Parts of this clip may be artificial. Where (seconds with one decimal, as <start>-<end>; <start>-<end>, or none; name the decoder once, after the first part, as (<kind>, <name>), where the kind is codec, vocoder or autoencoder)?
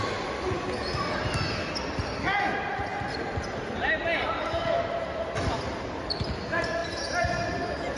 none